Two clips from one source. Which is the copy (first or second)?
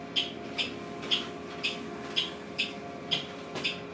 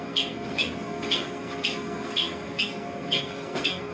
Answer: second